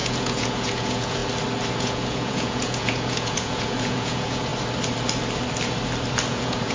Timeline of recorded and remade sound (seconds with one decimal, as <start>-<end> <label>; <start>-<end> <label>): 0.0-1.2 remade; 1.2-1.8 recorded; 1.8-4.5 remade; 4.5-6.3 recorded; 6.3-6.7 remade